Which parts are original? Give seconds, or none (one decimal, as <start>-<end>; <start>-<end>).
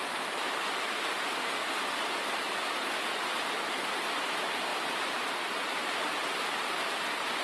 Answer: 0.0-1.6; 2.2-4.7; 5.3-5.8; 7.0-7.4